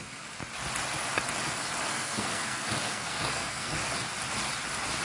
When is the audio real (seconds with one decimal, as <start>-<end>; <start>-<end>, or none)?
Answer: 0.4-1.8; 3.8-5.0